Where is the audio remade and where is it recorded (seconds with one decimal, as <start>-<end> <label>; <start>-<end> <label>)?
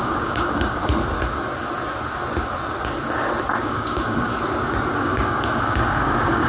0.0-0.8 remade; 0.8-3.6 recorded; 3.6-4.3 remade; 4.3-5.0 recorded; 5.0-6.5 remade